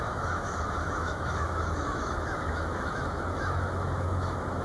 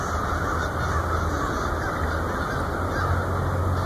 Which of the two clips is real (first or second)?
second